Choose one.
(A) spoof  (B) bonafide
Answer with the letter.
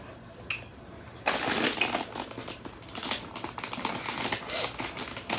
B